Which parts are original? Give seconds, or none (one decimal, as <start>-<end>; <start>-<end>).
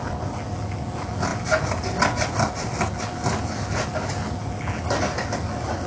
0.0-5.9